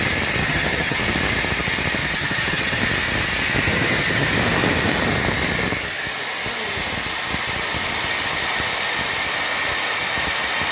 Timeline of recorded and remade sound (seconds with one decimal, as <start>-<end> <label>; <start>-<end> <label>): 0.0-0.4 recorded; 0.4-1.0 remade; 1.0-2.0 recorded; 2.0-2.8 remade; 2.8-3.7 recorded; 3.7-4.3 remade; 4.3-10.7 recorded